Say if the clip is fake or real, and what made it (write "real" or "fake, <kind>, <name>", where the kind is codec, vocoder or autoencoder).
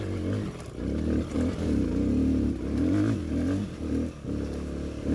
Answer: real